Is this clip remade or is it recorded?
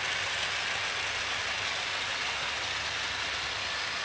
recorded